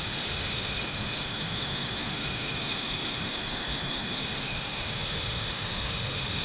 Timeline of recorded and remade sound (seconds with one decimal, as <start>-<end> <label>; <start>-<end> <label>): 0.0-6.4 remade